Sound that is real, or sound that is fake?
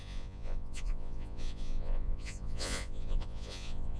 fake